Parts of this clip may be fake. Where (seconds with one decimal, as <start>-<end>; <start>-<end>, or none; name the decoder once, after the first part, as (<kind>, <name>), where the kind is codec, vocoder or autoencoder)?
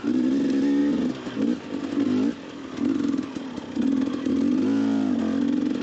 none